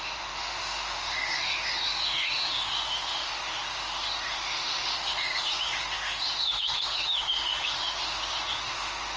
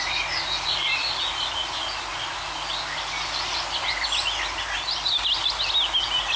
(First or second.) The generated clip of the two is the first